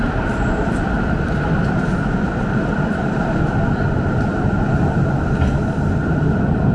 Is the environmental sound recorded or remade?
recorded